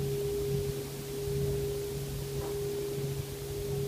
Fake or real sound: real